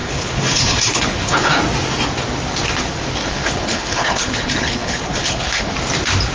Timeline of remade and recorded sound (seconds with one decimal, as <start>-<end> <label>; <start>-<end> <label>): 0.0-1.6 remade; 1.6-3.2 recorded; 3.2-5.7 remade; 5.7-6.3 recorded

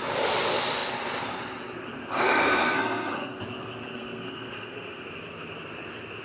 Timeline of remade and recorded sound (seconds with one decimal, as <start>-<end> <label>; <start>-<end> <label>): 0.0-2.4 recorded; 2.4-3.4 remade; 3.4-3.9 recorded; 3.9-5.1 remade; 5.1-6.2 recorded